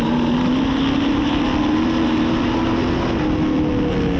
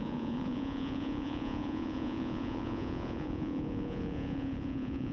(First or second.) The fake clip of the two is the second